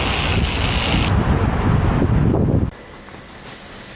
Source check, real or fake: real